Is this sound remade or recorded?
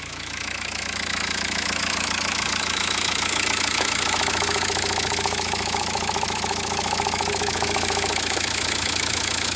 remade